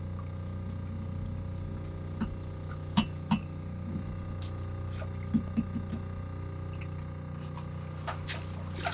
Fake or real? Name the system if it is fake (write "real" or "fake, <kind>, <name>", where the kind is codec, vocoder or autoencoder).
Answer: real